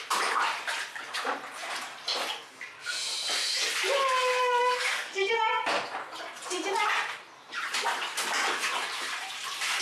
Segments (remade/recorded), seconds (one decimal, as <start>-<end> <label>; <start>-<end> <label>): 0.0-4.6 recorded; 4.6-5.6 remade; 5.6-9.8 recorded